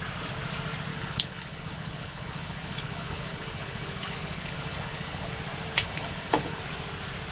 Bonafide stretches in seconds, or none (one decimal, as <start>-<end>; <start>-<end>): 0.0-0.9; 5.3-5.7; 6.6-7.3